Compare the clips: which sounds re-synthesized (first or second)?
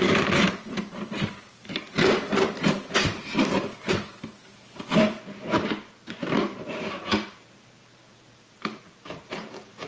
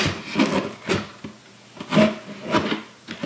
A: first